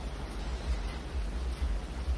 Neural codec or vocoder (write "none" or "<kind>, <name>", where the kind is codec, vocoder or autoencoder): none